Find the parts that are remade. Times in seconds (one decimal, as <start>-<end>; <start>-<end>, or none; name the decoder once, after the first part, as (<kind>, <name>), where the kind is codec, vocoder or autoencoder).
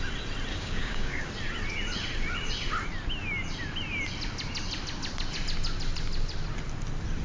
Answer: 0.5-1.3 (codec, DAC)